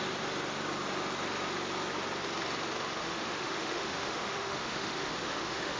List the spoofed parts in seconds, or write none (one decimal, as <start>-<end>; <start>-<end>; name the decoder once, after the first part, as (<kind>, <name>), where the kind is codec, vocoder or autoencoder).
3.0-5.8 (autoencoder, DAC-VAE)